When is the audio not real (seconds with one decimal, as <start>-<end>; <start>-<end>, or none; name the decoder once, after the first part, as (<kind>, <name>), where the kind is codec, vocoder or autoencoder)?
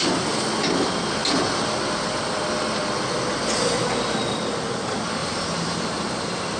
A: 5.2-6.6 (vocoder, BigVGAN v2)